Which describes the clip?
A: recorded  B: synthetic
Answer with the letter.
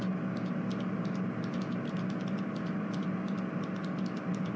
A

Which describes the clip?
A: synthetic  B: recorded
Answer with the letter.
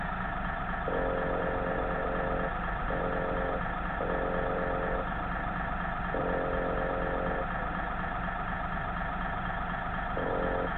B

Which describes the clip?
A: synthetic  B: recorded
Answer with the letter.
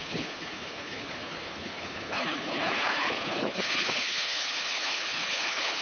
A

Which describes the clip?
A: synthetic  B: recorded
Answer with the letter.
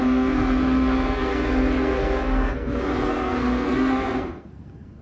A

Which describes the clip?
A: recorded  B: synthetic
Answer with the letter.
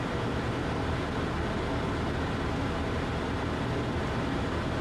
A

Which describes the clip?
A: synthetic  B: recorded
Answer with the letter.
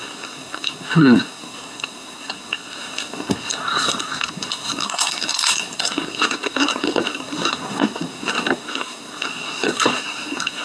A